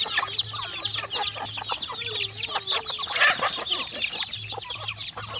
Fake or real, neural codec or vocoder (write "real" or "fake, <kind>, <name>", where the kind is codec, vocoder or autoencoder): real